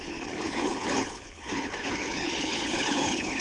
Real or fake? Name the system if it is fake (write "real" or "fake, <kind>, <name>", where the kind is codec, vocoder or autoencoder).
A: fake, codec, HILCodec